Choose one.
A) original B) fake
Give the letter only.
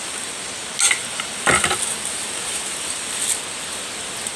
A